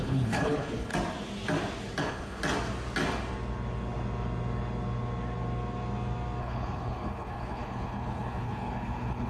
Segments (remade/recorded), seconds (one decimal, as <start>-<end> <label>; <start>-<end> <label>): 0.0-0.9 remade; 0.9-2.0 recorded; 2.0-2.4 remade; 2.4-6.4 recorded; 6.4-9.3 remade